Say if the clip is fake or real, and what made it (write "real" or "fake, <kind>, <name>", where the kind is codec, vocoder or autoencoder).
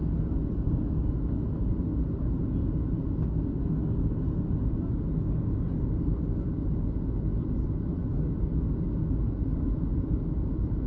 real